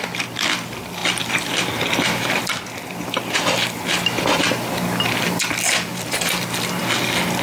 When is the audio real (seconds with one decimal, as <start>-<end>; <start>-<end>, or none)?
0.0-1.0; 4.4-5.9; 6.8-7.4